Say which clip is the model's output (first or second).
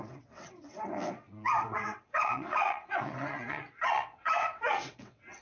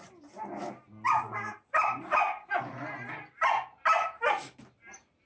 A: first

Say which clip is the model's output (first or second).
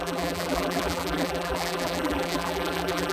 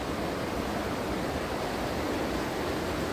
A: first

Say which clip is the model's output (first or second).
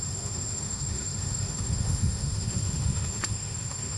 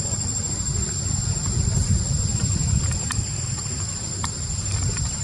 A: first